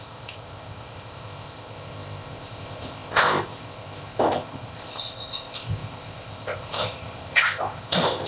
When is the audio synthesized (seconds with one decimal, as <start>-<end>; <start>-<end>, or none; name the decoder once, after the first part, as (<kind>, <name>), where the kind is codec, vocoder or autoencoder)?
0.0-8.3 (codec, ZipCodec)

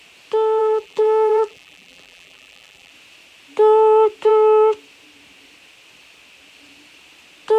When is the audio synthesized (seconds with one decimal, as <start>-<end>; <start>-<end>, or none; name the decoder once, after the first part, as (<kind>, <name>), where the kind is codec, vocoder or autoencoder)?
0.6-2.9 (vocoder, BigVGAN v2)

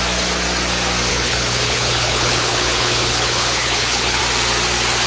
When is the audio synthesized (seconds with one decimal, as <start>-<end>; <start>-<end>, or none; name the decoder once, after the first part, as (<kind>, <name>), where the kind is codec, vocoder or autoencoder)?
1.1-4.2 (codec, HILCodec)